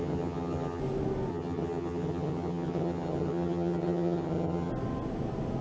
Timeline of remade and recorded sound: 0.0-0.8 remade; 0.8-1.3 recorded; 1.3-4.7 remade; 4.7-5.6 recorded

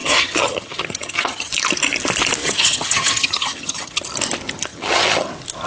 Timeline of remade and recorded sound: 0.0-1.5 remade; 1.5-2.4 recorded; 2.4-4.0 remade; 4.0-4.7 recorded; 4.7-5.3 remade; 5.3-5.7 recorded

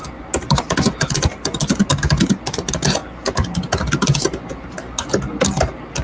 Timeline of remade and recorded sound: 0.0-6.0 recorded

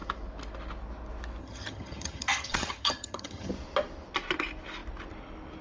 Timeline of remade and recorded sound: 0.0-1.4 recorded; 1.4-3.5 remade; 3.5-5.6 recorded

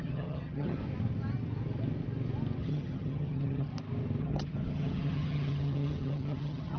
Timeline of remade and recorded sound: 0.0-0.8 remade; 0.8-2.6 recorded; 2.6-3.7 remade; 3.7-4.2 recorded; 4.2-6.8 remade

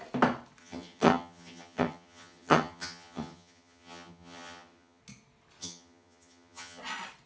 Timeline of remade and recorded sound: 0.0-0.6 recorded; 0.6-5.0 remade; 5.0-5.6 recorded; 5.6-6.8 remade; 6.8-7.3 recorded